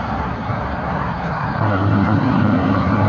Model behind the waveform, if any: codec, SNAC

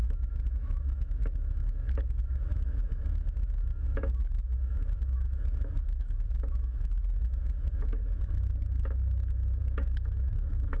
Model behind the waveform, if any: autoencoder, DAC-VAE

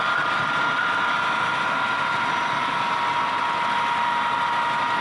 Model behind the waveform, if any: none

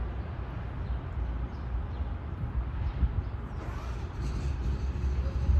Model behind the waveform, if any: none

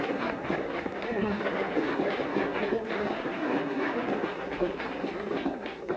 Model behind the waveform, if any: codec, SNAC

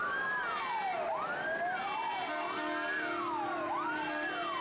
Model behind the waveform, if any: none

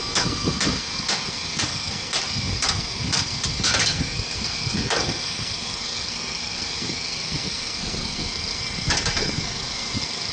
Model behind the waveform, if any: codec, SNAC